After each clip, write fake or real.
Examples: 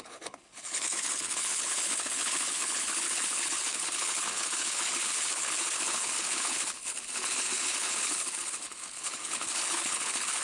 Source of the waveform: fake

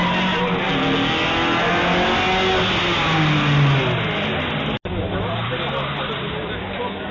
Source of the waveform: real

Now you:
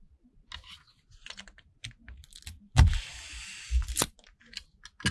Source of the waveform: real